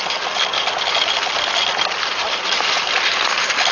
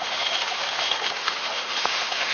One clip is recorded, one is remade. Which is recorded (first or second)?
first